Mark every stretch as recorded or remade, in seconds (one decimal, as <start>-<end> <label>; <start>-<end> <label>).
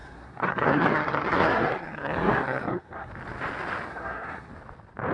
0.0-3.1 remade; 3.1-3.9 recorded; 3.9-4.5 remade; 4.5-5.1 recorded